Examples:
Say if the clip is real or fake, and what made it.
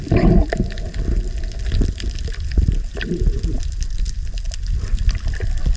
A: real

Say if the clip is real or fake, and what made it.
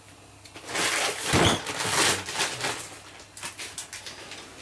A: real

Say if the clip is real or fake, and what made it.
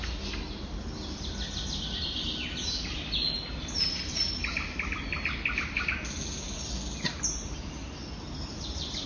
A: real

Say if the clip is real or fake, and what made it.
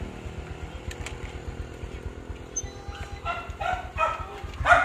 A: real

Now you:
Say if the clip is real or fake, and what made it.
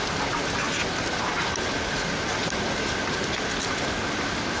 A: real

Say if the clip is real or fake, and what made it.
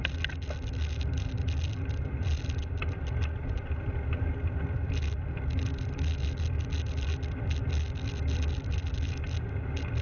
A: real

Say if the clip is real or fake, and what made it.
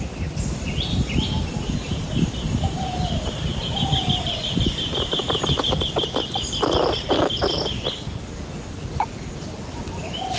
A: real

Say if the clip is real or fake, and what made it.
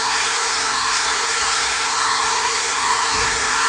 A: fake, codec, SNAC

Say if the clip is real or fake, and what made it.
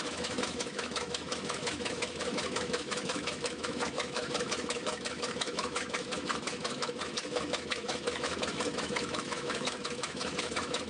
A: fake, autoencoder, DAC-VAE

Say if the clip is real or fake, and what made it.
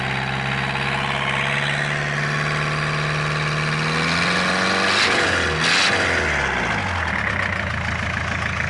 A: real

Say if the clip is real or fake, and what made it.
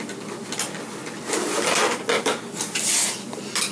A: real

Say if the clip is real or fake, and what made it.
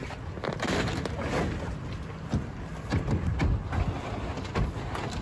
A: real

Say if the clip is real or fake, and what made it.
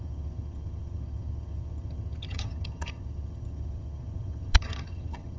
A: fake, vocoder, HiFi-GAN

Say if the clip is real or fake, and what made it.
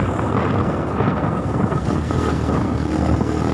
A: fake, codec, SNAC